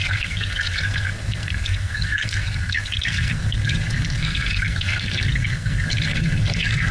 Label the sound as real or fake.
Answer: fake